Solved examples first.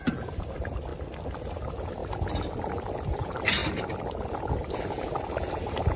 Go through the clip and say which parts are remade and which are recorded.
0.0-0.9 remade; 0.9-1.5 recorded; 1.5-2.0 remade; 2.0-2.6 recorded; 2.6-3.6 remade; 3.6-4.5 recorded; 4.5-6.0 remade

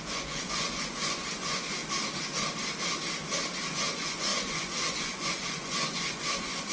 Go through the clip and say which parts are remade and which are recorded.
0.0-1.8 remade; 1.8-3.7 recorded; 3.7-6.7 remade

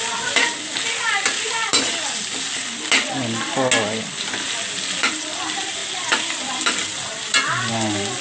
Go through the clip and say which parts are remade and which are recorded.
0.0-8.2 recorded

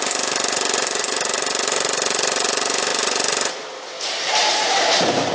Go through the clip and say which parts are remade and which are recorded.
0.0-5.3 recorded

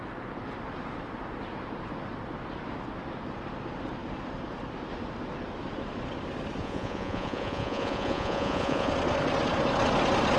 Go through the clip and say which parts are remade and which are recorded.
0.0-6.6 recorded; 6.6-8.9 remade; 8.9-10.4 recorded